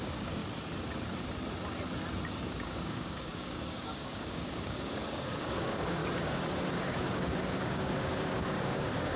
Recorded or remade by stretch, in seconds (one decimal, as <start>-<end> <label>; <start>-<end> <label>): 0.0-0.4 remade; 0.4-2.5 recorded; 2.5-6.0 remade; 6.0-6.7 recorded; 6.7-9.2 remade